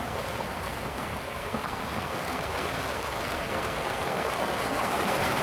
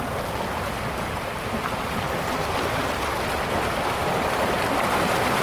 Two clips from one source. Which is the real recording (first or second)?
second